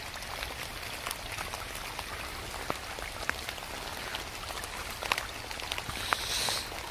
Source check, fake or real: real